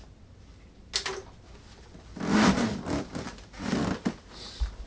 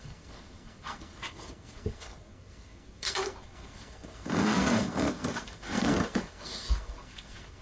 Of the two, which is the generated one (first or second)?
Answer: second